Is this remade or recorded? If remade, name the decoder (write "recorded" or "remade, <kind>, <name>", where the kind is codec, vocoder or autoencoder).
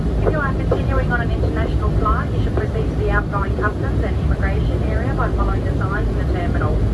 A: remade, vocoder, BigVGAN v2